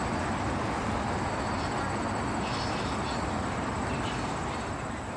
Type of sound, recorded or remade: recorded